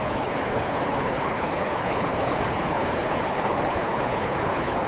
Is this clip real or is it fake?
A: fake